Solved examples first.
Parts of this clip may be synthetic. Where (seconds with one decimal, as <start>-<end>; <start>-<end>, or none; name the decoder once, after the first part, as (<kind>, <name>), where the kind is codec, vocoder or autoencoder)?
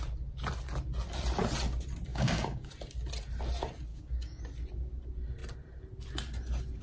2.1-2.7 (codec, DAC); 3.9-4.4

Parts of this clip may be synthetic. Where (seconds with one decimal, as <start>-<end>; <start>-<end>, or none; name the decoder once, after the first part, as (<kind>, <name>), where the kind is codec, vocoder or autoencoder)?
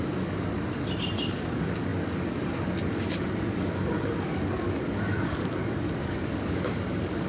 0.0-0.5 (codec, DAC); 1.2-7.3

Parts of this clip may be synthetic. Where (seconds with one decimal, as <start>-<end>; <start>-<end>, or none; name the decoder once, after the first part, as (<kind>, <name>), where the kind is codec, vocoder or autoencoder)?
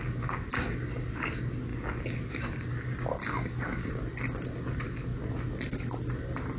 3.2-3.9 (codec, DAC)